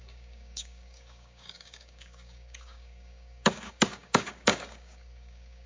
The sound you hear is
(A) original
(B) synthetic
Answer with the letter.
B